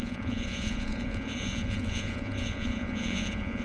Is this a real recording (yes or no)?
no